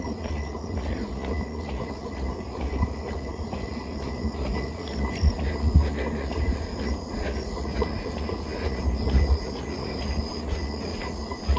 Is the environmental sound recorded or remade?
remade